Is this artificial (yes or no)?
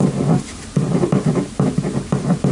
no